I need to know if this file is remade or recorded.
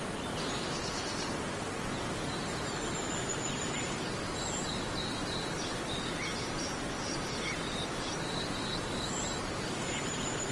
recorded